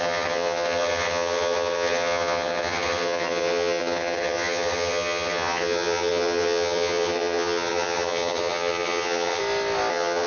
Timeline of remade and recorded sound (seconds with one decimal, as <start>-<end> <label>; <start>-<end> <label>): 0.0-9.4 remade; 9.4-9.9 recorded; 9.9-10.3 remade